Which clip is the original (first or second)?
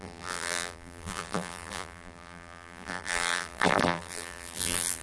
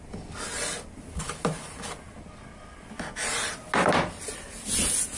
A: second